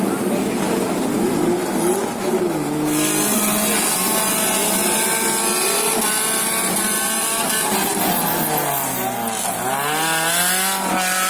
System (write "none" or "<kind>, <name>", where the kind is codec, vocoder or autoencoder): none